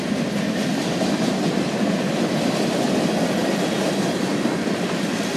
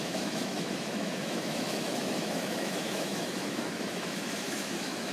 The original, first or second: first